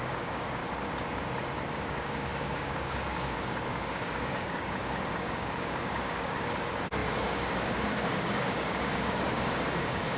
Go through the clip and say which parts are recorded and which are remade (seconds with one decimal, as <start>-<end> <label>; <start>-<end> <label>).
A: 0.0-0.6 remade; 0.6-1.7 recorded; 1.7-10.2 remade